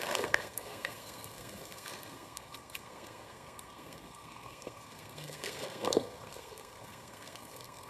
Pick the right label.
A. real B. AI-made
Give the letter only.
B